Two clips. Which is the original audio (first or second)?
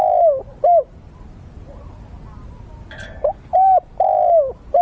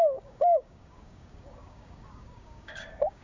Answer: first